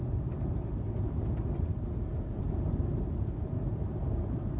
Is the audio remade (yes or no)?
no